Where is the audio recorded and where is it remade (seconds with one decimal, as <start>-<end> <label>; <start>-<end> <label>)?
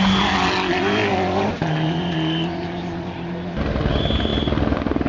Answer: 0.0-5.1 recorded